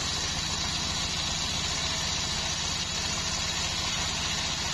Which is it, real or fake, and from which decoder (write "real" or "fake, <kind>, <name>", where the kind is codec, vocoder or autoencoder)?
real